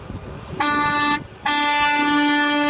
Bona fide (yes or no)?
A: yes